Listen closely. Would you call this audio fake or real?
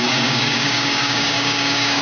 fake